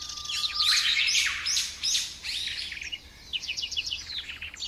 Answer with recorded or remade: recorded